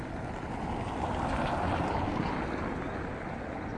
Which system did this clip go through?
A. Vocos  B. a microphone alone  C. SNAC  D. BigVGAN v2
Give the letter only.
B